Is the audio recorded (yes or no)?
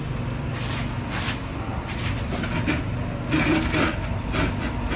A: yes